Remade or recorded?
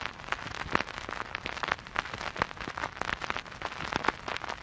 recorded